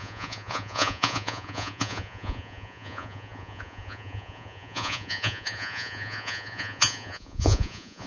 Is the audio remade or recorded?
remade